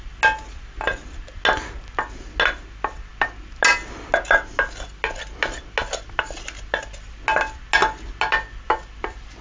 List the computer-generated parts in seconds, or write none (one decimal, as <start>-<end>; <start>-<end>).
none